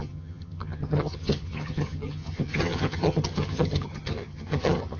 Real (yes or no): no